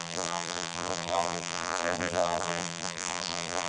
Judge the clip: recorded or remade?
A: remade